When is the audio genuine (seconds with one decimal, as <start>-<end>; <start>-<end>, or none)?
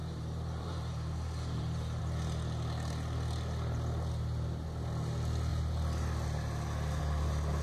2.0-7.6